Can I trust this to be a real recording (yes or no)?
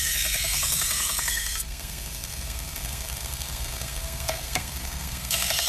no